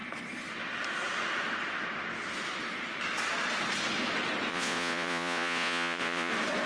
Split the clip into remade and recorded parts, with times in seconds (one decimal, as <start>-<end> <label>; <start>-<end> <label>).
0.0-4.5 recorded; 4.5-6.3 remade; 6.3-6.7 recorded